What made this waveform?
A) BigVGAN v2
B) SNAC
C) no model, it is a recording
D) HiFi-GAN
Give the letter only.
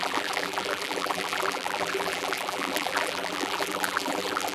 A